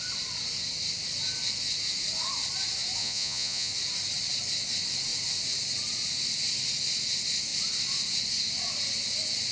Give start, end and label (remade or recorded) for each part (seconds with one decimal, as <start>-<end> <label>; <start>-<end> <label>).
0.0-3.0 recorded; 3.0-3.7 remade; 3.7-9.5 recorded